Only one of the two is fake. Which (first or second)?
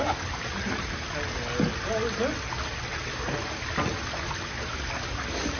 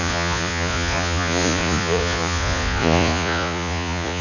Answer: second